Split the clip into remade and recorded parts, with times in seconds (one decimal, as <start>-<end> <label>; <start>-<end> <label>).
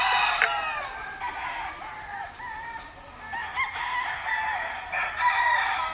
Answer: 0.0-5.9 recorded